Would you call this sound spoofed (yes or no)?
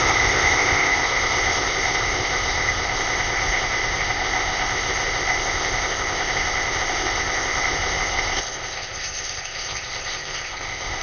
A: yes